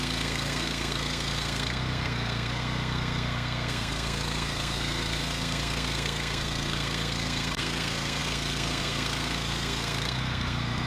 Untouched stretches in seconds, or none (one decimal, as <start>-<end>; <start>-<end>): none